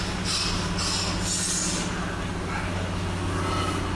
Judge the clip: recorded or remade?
recorded